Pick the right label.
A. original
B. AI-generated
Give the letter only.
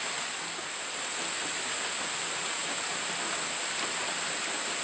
A